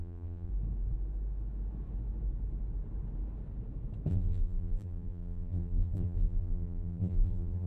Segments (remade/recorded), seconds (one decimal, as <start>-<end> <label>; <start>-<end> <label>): 0.0-0.5 remade; 0.5-4.1 recorded; 4.1-7.7 remade